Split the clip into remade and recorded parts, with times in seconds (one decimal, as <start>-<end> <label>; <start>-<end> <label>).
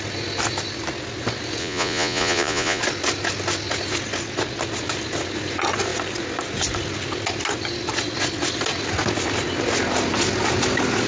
0.0-1.6 recorded; 1.6-2.8 remade; 2.8-11.1 recorded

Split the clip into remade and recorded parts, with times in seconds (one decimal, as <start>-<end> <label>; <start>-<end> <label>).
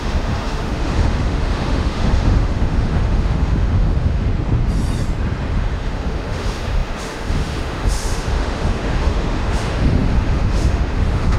0.0-4.3 remade; 4.3-5.5 recorded; 5.5-11.4 remade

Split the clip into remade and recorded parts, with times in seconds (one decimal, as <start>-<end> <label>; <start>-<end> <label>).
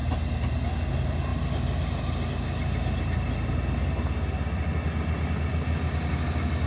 0.0-6.7 recorded